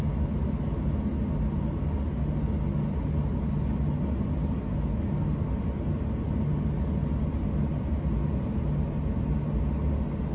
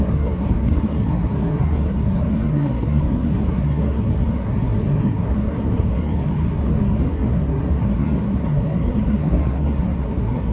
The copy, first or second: second